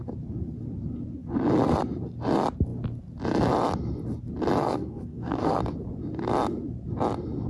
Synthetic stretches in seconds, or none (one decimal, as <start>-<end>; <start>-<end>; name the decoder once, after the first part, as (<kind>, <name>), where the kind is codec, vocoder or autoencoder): 4.6-5.6 (codec, SNAC)